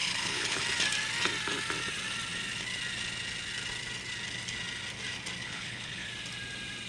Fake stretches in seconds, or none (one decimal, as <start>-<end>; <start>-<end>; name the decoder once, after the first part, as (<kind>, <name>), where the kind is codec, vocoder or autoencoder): 0.0-0.6 (codec, HILCodec); 5.4-6.1